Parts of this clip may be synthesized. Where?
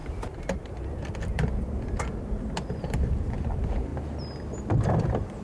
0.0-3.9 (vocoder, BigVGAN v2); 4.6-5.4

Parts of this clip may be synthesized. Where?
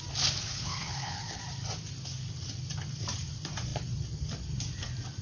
0.4-1.4 (codec, HILCodec)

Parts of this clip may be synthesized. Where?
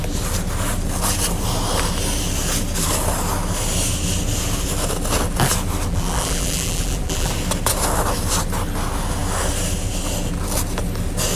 5.9-7.3 (vocoder, BigVGAN v2)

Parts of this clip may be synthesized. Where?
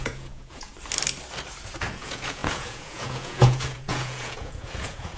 0.0-0.7 (vocoder, Vocos); 1.8-5.2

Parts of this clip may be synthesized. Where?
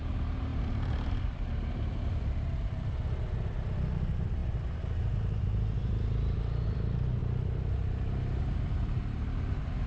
0.0-0.5 (vocoder, BigVGAN v2); 1.2-7.2; 8.4-9.9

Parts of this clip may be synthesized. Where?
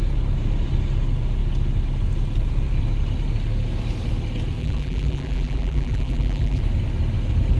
4.6-6.6 (vocoder, BigVGAN v2)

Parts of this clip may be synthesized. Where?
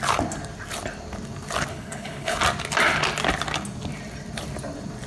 1.7-2.4 (codec, HILCodec)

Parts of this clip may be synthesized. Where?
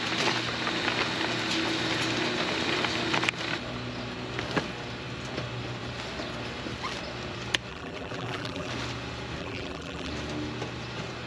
7.7-8.7 (vocoder, BigVGAN v2); 9.4-10.1